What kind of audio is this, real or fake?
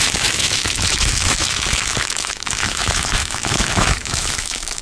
fake